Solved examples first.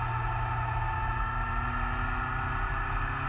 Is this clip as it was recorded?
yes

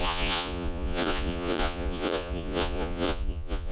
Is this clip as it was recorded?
no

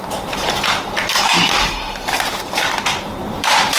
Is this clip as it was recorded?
no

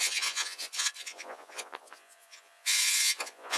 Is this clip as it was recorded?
no